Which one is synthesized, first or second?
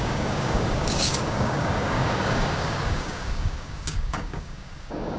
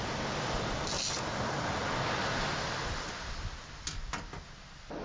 first